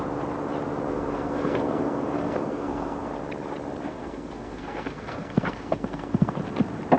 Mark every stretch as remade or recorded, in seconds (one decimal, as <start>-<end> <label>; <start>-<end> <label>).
0.0-0.9 recorded; 0.9-3.1 remade; 3.1-3.9 recorded; 3.9-6.4 remade; 6.4-7.0 recorded